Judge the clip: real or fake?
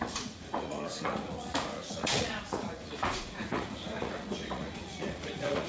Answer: fake